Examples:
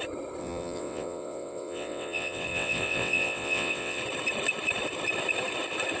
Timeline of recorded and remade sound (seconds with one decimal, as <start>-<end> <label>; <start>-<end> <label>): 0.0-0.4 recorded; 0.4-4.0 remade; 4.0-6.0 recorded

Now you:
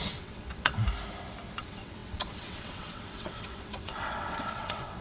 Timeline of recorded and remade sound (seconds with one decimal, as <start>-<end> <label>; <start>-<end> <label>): 0.0-0.8 remade; 0.8-1.6 recorded; 1.6-5.0 remade

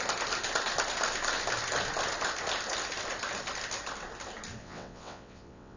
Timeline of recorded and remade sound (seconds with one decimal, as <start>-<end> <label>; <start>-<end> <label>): 0.0-4.6 recorded; 4.6-5.8 remade